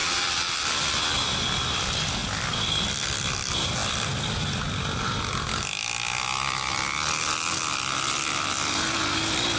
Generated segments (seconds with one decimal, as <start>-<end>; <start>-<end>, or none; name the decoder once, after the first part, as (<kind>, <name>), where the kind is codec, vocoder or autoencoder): none

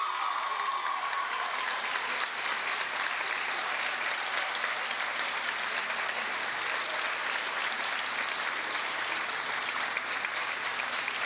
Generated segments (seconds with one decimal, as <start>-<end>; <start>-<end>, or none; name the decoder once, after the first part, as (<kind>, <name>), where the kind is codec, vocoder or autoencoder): none